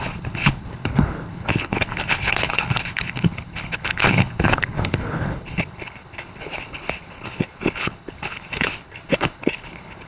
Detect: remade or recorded remade